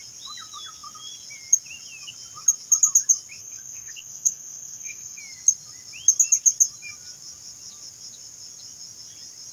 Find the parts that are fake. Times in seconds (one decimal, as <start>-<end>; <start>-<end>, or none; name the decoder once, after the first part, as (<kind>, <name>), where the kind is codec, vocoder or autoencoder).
3.4-5.2 (codec, SNAC)

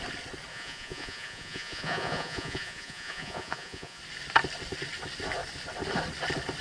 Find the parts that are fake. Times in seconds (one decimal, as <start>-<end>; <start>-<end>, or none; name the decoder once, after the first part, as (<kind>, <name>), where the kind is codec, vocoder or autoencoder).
0.5-4.0 (vocoder, Vocos)

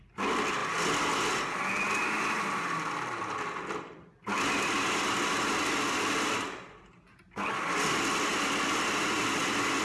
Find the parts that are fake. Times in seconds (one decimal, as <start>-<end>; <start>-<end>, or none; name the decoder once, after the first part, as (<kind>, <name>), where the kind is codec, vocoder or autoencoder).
none

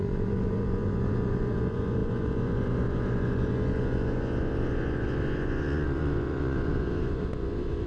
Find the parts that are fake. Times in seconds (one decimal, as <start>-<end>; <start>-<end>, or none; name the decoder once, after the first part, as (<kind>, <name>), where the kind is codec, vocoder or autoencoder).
0.0-7.9 (vocoder, Vocos)

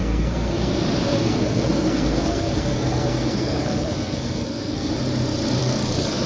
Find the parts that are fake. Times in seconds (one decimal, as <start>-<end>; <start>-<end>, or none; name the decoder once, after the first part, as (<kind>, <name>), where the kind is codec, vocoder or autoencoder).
0.0-0.7 (codec, SNAC); 1.1-4.9; 5.6-6.3

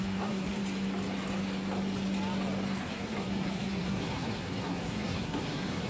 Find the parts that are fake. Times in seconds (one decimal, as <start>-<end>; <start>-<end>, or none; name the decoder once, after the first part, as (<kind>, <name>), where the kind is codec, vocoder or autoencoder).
0.0-0.6 (codec, SNAC); 2.9-5.9

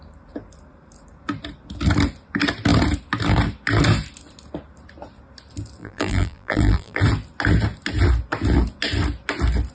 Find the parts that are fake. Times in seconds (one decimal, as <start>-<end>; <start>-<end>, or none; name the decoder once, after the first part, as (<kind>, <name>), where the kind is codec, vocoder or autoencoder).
5.8-7.0 (vocoder, BigVGAN v2)